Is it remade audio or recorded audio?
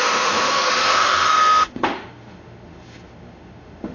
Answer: remade